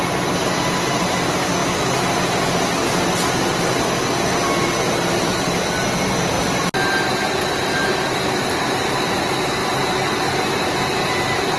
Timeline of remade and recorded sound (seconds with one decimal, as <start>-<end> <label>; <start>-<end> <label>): 0.0-11.6 recorded